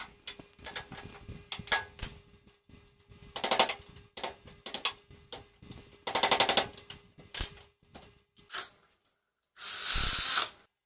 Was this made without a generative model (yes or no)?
yes